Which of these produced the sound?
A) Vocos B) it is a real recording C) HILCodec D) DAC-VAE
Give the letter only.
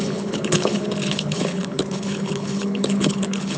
C